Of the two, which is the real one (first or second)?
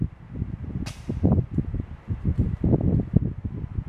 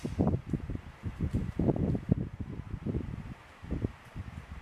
first